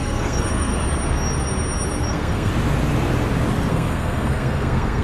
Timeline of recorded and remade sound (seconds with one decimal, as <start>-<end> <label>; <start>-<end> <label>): 0.0-0.7 remade; 0.7-2.1 recorded; 2.1-2.5 remade; 2.5-3.7 recorded; 3.7-5.0 remade